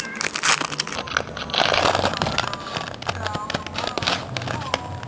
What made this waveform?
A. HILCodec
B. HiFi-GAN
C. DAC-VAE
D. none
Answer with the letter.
D